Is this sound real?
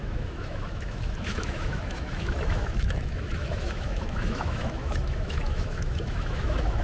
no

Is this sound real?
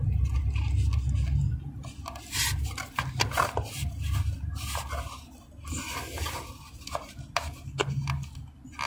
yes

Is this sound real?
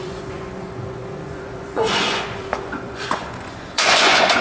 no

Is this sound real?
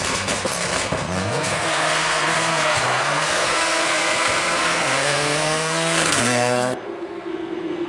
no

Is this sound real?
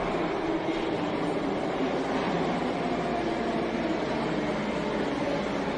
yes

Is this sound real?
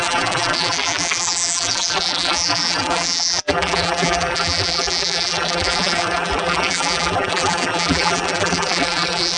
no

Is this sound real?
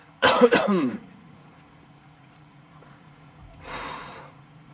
no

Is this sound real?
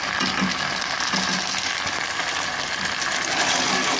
yes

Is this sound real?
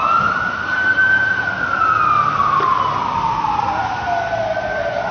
yes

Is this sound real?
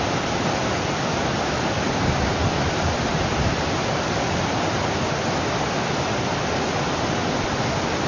yes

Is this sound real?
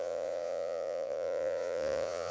no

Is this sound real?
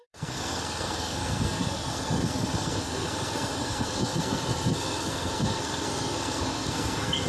no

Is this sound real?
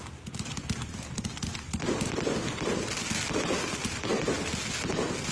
yes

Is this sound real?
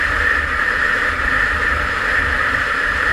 no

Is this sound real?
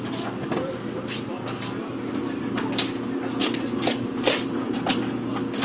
yes